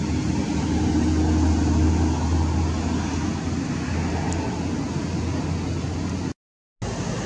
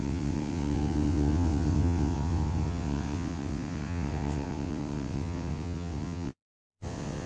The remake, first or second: second